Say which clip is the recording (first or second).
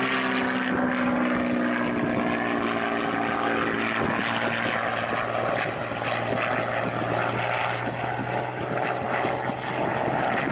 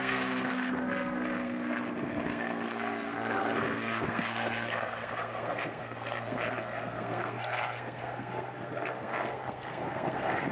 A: first